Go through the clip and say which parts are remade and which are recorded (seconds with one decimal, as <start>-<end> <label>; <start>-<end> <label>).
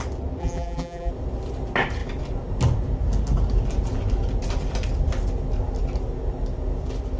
0.0-0.4 recorded; 0.4-1.1 remade; 1.1-7.2 recorded